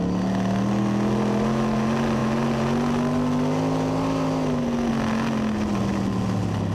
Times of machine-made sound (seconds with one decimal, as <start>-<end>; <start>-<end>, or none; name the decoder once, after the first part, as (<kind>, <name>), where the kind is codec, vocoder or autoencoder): none